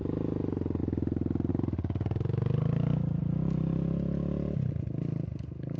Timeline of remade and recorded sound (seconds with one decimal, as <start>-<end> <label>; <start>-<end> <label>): 0.0-5.8 recorded